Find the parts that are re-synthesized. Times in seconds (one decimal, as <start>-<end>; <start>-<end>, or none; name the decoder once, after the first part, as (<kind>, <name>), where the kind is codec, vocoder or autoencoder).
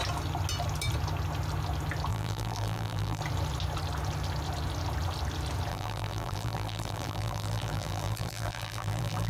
2.1-3.2 (vocoder, BigVGAN v2); 5.7-9.3